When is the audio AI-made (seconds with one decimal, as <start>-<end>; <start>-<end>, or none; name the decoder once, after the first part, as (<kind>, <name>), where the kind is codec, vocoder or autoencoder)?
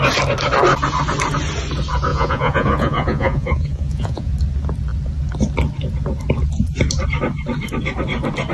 2.1-4.3 (vocoder, Vocos)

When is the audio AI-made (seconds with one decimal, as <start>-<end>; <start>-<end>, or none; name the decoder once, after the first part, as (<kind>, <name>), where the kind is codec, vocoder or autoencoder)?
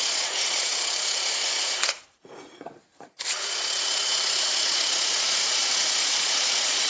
0.0-6.9 (vocoder, Vocos)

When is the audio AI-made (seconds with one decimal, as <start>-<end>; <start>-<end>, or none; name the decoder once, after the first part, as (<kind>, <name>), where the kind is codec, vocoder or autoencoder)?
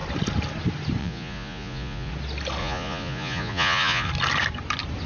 1.0-2.1 (vocoder, Vocos); 2.6-4.1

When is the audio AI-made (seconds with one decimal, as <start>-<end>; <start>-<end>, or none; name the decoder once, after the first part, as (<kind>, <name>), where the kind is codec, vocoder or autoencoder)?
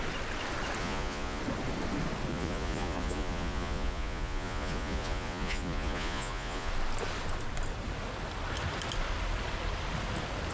0.8-1.4 (vocoder, Vocos); 2.3-6.7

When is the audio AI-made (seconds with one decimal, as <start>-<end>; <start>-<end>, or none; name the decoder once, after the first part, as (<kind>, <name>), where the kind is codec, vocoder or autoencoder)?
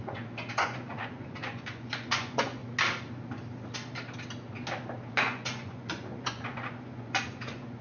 0.0-2.6 (vocoder, Vocos); 5.1-7.8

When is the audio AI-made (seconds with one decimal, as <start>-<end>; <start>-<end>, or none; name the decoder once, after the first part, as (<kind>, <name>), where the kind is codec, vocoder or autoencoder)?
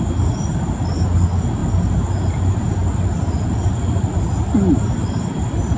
none